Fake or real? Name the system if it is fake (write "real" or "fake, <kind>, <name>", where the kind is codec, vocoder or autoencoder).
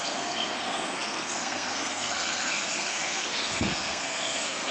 fake, codec, SNAC